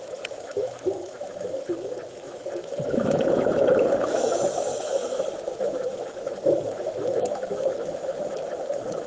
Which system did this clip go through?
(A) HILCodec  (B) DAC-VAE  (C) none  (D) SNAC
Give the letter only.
B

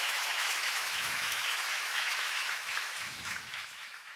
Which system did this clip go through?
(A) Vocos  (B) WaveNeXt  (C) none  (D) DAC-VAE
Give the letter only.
D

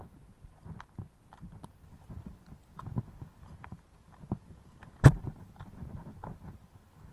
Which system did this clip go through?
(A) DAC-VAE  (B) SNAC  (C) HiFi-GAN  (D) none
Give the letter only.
D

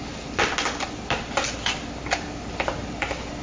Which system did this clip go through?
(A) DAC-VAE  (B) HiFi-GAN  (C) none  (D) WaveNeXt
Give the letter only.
C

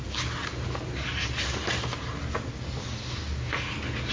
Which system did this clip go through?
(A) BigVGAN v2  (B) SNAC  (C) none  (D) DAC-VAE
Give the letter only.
C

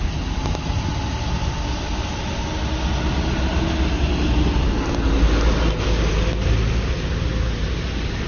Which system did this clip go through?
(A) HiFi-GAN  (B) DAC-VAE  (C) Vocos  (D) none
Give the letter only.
D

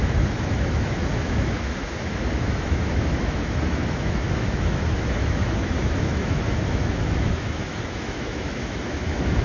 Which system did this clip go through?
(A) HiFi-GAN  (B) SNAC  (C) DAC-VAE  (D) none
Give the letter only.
C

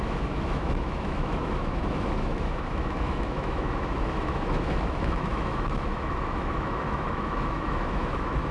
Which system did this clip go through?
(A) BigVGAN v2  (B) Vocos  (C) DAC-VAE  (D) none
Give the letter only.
C